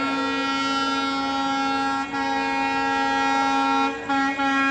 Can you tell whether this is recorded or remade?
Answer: recorded